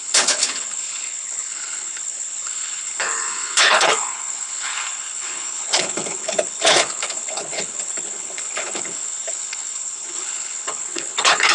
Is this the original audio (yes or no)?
no